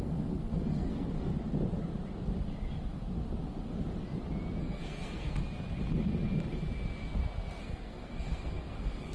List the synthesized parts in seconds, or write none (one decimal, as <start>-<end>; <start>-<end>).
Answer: 0.0-1.3; 4.6-5.4; 7.6-9.1